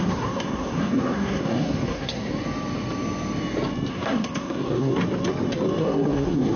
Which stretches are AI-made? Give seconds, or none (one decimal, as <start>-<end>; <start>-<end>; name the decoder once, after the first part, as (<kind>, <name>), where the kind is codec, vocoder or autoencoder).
0.0-2.3 (codec, SNAC); 3.9-4.9; 5.8-6.6